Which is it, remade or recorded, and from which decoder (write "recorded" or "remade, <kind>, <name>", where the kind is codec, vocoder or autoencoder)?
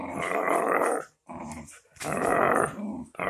recorded